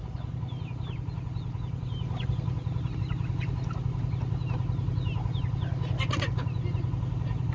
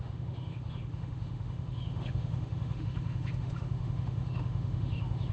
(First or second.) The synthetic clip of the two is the second